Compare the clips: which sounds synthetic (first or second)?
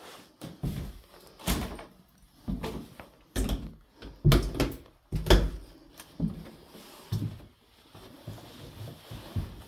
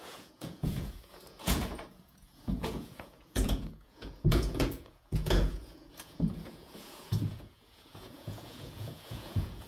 second